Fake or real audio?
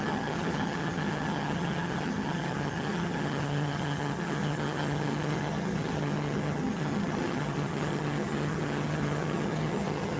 fake